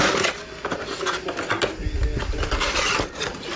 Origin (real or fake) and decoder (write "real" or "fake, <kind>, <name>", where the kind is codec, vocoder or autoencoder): real